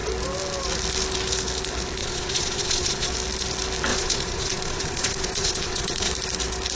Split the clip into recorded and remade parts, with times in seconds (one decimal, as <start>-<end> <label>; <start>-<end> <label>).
0.0-2.0 recorded; 2.0-3.1 remade; 3.1-3.9 recorded; 3.9-6.1 remade; 6.1-6.8 recorded